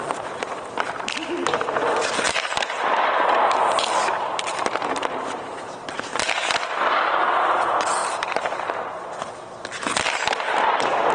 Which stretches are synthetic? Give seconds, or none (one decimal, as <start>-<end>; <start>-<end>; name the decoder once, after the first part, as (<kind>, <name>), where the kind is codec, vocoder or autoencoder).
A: 8.0-9.3 (vocoder, BigVGAN v2)